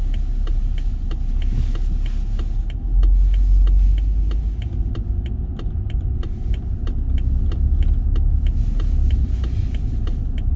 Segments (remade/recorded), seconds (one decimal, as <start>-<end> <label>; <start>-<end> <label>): 0.0-10.6 recorded